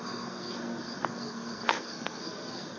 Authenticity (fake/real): fake